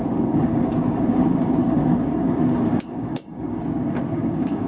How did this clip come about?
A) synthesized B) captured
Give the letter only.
A